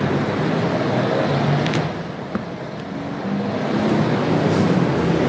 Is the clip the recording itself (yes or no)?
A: yes